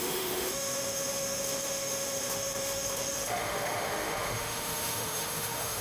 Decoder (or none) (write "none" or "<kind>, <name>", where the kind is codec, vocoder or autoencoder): autoencoder, DAC-VAE